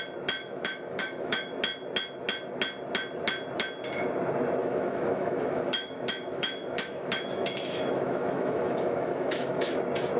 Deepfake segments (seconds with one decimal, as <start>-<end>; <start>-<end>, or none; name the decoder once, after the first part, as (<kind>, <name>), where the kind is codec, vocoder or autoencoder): 0.4-1.5 (autoencoder, DAC-VAE); 4.6-9.7